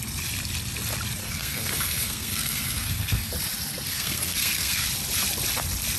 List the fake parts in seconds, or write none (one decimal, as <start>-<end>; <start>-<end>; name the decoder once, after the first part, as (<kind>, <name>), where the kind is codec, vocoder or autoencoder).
1.2-3.3 (codec, SNAC); 3.9-4.9